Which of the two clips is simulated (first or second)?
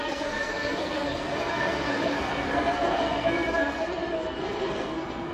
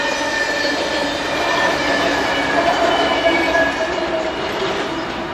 first